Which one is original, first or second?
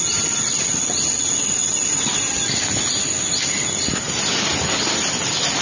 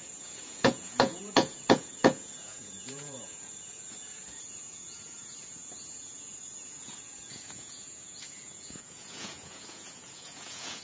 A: first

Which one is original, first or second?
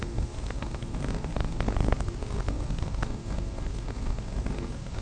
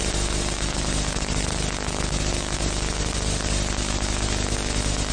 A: second